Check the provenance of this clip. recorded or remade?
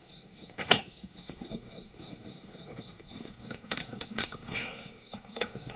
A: remade